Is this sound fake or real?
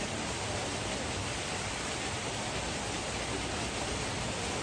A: real